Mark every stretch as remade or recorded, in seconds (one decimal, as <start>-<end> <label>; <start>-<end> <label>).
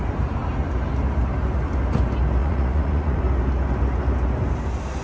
0.0-2.4 recorded; 2.4-3.2 remade; 3.2-5.0 recorded